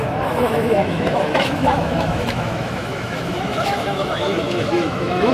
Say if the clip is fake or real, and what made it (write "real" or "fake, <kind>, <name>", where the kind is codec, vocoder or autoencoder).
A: fake, autoencoder, DAC-VAE